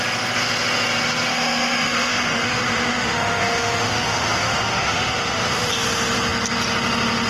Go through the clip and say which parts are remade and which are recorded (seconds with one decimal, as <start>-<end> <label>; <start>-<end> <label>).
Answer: 0.0-1.3 recorded; 1.3-5.7 remade; 5.7-7.3 recorded